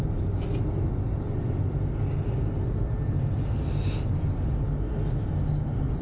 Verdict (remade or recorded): recorded